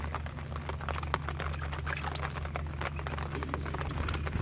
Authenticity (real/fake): real